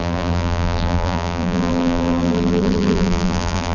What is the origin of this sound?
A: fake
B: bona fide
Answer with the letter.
A